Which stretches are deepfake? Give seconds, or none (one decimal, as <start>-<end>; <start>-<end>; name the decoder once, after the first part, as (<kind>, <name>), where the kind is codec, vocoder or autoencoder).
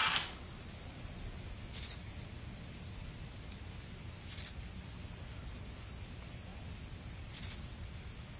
none